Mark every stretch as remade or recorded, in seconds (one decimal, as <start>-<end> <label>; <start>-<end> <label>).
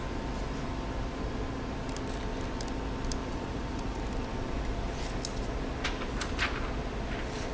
0.0-3.2 recorded; 3.2-4.0 remade; 4.0-7.5 recorded